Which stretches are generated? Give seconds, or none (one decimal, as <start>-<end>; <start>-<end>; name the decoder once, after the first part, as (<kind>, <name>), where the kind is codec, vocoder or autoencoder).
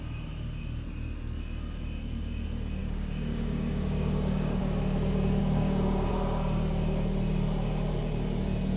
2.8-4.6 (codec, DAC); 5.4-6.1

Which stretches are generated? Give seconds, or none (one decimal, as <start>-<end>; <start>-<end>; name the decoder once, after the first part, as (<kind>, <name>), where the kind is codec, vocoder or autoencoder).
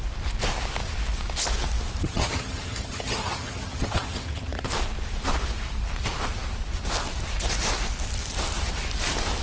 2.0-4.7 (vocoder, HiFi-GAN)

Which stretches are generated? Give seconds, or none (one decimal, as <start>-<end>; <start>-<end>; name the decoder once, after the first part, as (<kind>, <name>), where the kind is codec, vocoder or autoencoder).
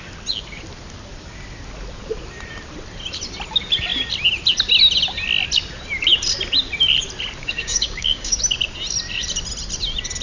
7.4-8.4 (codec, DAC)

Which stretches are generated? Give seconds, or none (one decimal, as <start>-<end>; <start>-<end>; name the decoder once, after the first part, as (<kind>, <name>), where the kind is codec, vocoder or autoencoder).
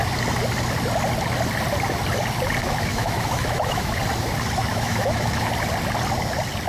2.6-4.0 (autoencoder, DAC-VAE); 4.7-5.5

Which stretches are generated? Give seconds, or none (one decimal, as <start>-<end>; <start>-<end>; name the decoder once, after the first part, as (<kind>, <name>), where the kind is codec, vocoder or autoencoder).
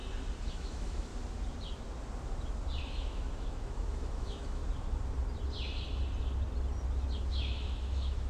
0.5-1.1 (autoencoder, DAC-VAE); 2.8-4.6; 7.3-8.3